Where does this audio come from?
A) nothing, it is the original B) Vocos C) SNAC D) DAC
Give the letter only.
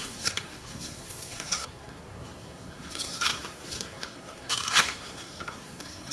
C